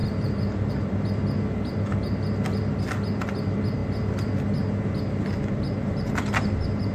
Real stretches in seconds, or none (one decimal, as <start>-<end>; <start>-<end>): 0.0-6.9